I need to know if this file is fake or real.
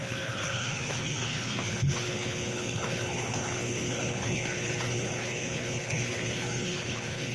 fake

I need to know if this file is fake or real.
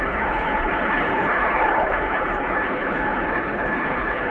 fake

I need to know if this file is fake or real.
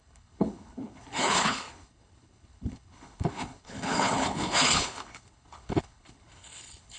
fake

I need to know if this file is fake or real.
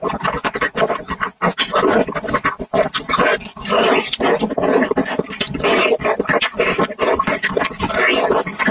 real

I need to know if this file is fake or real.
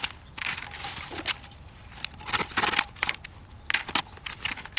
real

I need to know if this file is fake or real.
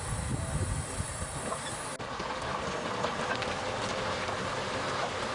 real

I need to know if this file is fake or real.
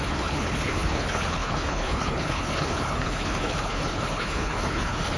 fake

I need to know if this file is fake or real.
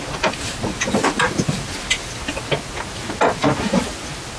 real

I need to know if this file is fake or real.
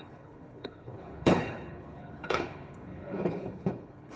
fake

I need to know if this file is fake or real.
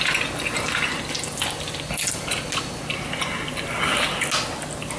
real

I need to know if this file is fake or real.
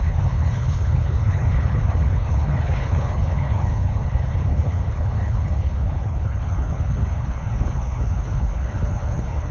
fake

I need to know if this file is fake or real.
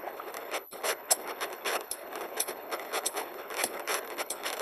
fake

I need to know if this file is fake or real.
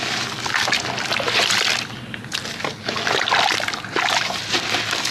real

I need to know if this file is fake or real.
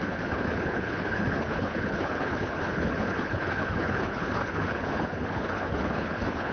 fake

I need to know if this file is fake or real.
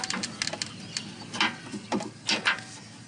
real